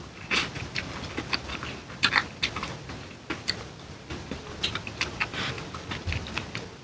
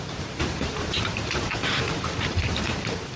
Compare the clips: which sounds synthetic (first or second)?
second